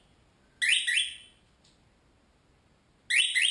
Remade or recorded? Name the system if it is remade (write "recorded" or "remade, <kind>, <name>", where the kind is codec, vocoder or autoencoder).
recorded